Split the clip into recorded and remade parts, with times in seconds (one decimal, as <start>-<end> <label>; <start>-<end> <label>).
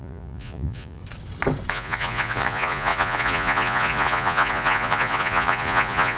0.0-1.0 remade; 1.0-1.7 recorded; 1.7-6.2 remade